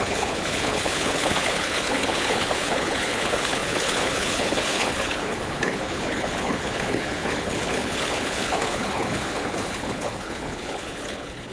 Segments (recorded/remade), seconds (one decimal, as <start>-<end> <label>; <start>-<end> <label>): 0.0-11.5 remade